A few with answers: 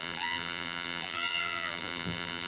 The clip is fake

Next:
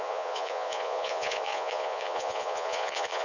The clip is fake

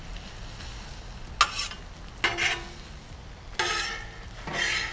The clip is real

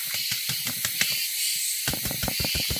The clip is fake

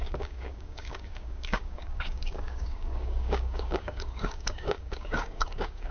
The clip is fake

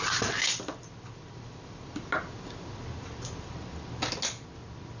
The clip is real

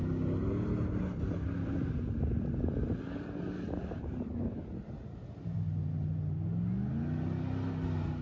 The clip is real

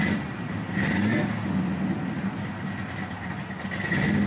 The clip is real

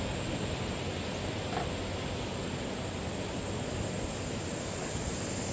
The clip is real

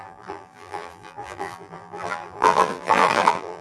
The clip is fake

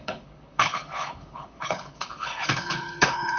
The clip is fake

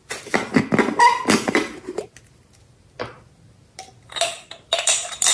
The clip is real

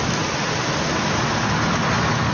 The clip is real